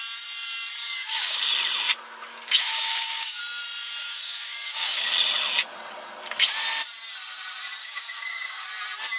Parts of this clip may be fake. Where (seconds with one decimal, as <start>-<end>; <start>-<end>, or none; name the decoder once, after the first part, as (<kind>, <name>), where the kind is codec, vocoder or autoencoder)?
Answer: 0.8-1.4 (codec, DAC); 2.3-3.4; 4.0-5.1; 7.8-8.7

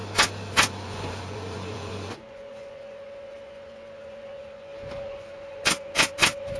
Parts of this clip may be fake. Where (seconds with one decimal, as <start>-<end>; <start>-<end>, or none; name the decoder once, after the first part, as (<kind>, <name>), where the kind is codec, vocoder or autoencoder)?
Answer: 0.5-6.6 (vocoder, Vocos)

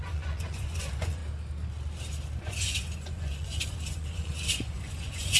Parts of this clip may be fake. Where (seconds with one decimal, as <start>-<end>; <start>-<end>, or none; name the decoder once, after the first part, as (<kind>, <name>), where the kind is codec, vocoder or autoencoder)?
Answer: 0.0-1.2 (vocoder, Vocos); 2.4-5.4